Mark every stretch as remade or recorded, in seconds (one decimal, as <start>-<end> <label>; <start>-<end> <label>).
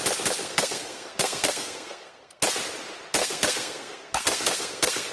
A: 0.0-0.4 recorded; 0.4-2.4 remade; 2.4-3.2 recorded; 3.2-5.1 remade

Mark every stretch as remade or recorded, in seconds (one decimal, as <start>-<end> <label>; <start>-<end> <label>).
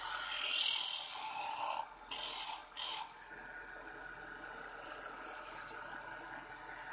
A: 0.0-6.9 recorded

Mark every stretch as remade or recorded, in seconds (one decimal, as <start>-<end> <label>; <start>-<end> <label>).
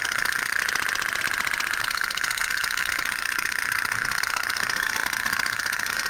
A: 0.0-0.6 remade; 0.6-1.8 recorded; 1.8-6.1 remade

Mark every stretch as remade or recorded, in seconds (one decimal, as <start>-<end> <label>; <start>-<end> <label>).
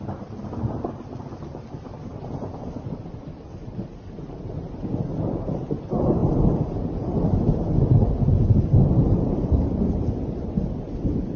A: 0.0-11.4 recorded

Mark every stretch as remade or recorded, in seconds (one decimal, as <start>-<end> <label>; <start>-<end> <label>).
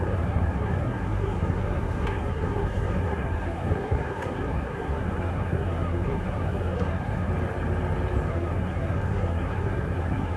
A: 0.0-7.3 remade; 7.3-8.3 recorded; 8.3-10.4 remade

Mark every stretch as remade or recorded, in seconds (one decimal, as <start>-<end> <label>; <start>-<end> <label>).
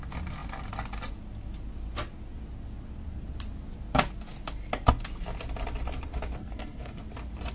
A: 0.0-6.4 recorded; 6.4-7.0 remade; 7.0-7.5 recorded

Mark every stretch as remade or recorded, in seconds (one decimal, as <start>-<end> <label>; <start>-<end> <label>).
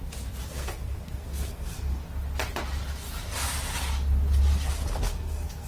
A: 0.0-0.5 recorded; 0.5-2.0 remade; 2.0-4.7 recorded; 4.7-5.7 remade